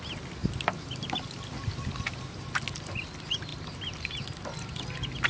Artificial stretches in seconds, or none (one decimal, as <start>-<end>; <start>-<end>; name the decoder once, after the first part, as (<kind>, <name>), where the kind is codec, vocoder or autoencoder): none

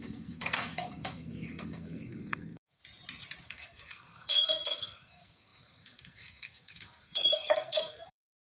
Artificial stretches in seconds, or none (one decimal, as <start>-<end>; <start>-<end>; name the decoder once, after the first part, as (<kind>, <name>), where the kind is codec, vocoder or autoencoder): 0.0-2.8 (codec, SNAC); 3.4-8.4

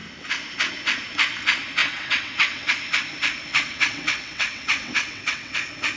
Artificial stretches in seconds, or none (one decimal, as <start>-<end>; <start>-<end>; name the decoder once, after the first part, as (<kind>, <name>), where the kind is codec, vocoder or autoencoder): 1.8-2.7 (vocoder, WaveNeXt); 3.5-5.5

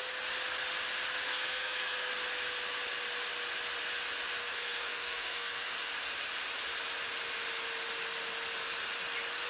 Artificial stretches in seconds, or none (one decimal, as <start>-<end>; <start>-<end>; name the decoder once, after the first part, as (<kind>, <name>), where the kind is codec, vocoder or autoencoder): 1.3-2.1 (codec, SNAC); 4.4-5.7